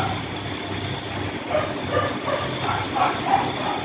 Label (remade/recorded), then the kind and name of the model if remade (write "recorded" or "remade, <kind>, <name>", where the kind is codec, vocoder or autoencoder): recorded